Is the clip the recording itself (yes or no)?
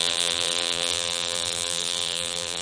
no